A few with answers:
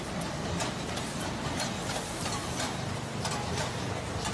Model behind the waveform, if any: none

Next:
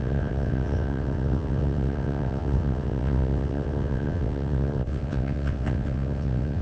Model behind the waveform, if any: vocoder, WaveNeXt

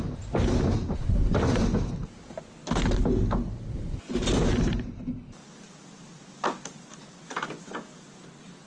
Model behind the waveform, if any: none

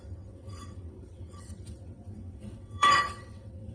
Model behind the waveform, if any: vocoder, WaveNeXt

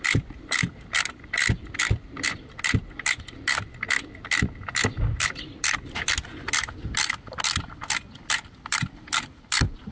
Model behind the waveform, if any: none